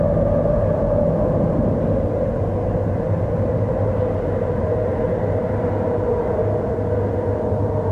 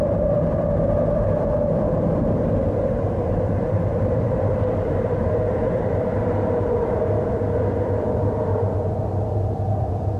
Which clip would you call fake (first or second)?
second